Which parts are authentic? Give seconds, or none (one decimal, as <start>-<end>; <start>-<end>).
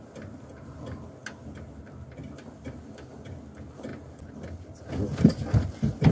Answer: 0.0-6.1